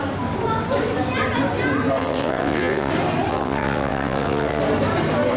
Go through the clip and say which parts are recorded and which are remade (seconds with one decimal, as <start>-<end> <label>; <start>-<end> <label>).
0.0-2.0 recorded; 2.0-2.9 remade; 2.9-3.3 recorded; 3.3-4.6 remade; 4.6-5.4 recorded